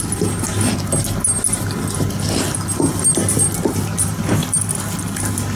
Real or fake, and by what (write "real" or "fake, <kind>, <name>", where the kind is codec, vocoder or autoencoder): real